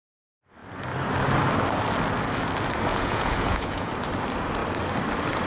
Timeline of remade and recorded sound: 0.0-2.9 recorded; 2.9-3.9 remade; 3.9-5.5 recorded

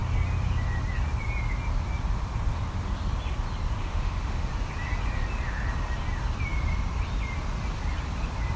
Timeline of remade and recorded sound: 0.0-3.8 recorded; 3.8-4.5 remade; 4.5-8.6 recorded

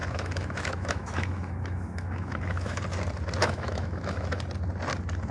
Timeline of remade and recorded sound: 0.0-2.8 remade; 2.8-3.4 recorded; 3.4-4.4 remade; 4.4-5.3 recorded

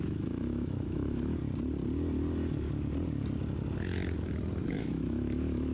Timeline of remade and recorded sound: 0.0-1.4 remade; 1.4-4.6 recorded; 4.6-5.7 remade

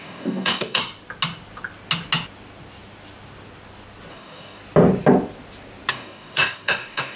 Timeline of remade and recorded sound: 0.0-0.8 remade; 0.8-4.1 recorded; 4.1-4.6 remade; 4.6-5.9 recorded; 5.9-7.2 remade

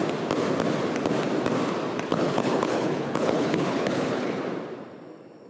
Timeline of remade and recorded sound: 0.0-2.1 recorded; 2.1-4.4 remade; 4.4-5.5 recorded